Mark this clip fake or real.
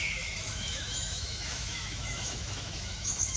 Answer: fake